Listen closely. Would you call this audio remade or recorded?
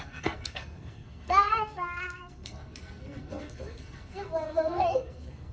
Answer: remade